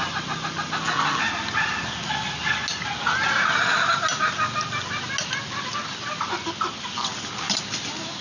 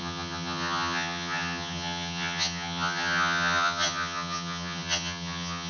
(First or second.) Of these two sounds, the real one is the first